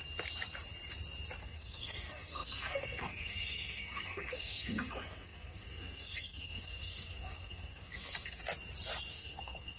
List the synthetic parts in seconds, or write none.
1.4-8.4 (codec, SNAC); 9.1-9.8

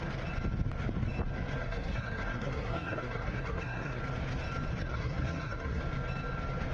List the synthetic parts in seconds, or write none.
1.6-4.0 (codec, SNAC); 4.8-5.8

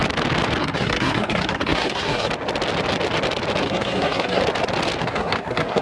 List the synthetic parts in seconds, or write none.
0.6-2.3 (codec, SNAC); 3.6-4.4; 5.0-5.8